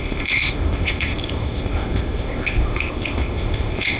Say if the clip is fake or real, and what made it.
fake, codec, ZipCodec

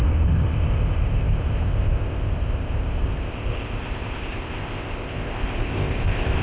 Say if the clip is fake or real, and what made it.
fake, codec, ZipCodec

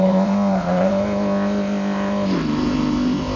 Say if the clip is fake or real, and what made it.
fake, codec, ZipCodec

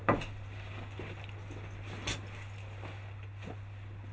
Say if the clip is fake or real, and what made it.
real